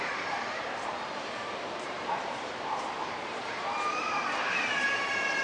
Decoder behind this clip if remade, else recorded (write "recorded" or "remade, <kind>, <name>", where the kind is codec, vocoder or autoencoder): remade, vocoder, BigVGAN v2